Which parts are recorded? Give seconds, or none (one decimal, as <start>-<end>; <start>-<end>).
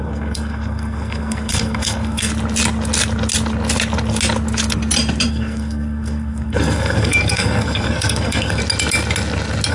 2.3-5.3; 8.6-9.7